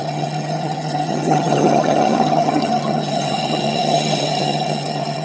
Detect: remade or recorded remade